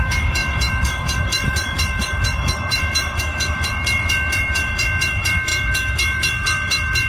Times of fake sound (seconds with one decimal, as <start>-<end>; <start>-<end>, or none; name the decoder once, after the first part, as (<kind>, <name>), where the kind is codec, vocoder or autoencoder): 0.0-7.1 (autoencoder, DAC-VAE)